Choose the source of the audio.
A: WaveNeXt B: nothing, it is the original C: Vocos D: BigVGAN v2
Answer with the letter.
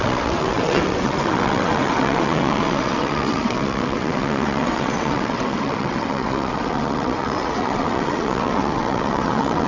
A